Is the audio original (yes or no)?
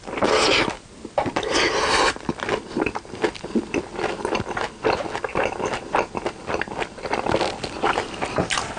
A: yes